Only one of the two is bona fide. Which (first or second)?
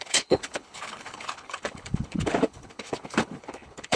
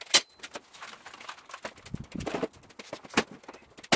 second